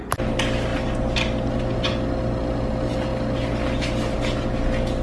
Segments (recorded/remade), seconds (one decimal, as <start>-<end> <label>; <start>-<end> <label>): 0.0-5.0 recorded